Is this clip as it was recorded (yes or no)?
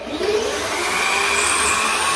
no